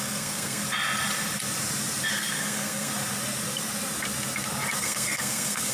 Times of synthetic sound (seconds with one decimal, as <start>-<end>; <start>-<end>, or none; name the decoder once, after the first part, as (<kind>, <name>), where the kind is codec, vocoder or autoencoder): 0.0-0.6 (codec, SNAC); 2.1-2.9; 4.8-5.7

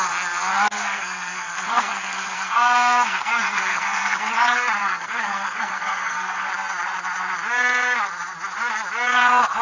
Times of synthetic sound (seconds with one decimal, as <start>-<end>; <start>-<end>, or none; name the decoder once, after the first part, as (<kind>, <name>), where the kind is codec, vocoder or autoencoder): 0.5-4.3 (codec, SNAC); 4.8-6.5

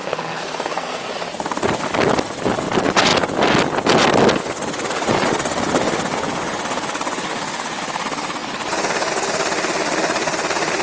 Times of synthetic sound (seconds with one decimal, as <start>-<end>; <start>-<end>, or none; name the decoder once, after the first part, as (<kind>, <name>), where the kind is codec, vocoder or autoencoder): 0.0-1.1 (codec, SNAC)

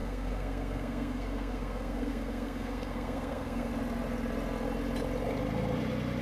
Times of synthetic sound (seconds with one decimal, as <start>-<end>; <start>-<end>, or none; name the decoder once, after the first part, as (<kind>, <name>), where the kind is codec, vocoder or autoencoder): 0.0-3.7 (codec, SNAC)

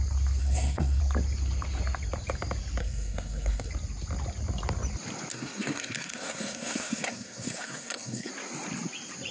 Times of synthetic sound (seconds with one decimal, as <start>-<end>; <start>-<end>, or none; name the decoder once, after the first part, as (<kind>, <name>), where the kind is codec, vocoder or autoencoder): 0.4-1.0 (codec, SNAC); 2.8-3.7; 5.3-8.3

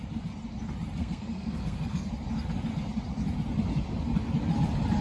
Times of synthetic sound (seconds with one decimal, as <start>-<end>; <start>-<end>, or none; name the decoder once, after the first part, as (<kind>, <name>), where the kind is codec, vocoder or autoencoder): 1.0-2.1 (codec, SNAC)

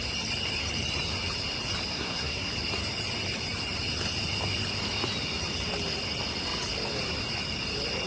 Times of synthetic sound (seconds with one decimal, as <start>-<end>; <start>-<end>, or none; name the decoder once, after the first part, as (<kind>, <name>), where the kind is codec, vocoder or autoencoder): 1.9-2.5 (codec, SNAC)